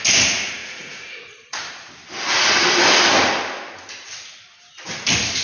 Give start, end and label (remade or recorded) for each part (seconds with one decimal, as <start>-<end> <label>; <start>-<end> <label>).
0.0-0.6 recorded; 0.6-1.9 remade; 1.9-5.4 recorded